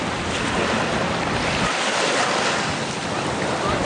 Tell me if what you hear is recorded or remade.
recorded